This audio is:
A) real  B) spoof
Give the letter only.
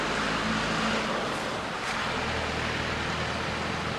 A